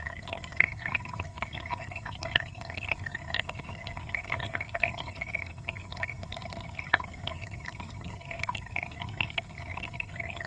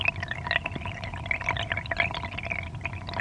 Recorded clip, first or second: second